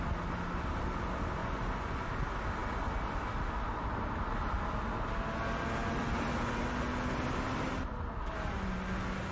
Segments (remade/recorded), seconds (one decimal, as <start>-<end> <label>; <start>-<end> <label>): 0.0-1.4 recorded; 1.4-2.1 remade; 2.1-9.3 recorded